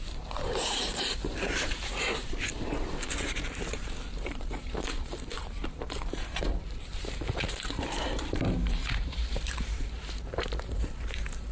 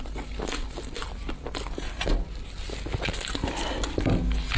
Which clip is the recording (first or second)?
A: second